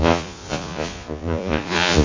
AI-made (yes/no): yes